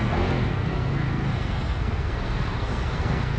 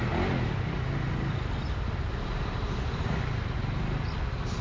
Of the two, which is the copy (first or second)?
first